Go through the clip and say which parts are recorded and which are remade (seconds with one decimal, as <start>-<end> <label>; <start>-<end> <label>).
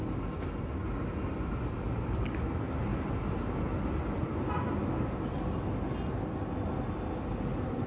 0.0-7.9 recorded